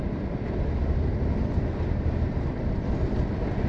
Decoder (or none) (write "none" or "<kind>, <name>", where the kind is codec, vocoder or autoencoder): none